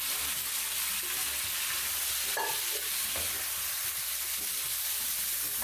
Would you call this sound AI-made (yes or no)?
no